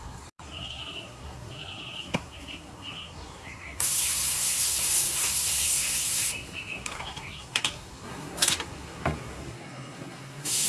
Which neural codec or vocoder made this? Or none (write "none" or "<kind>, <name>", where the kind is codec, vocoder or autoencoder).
codec, SNAC